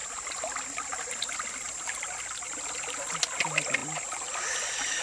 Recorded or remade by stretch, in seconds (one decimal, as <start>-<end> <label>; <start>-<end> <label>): 0.0-5.0 recorded